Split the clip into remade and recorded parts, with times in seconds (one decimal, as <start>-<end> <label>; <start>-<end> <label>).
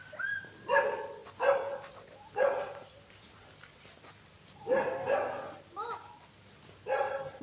0.0-7.4 recorded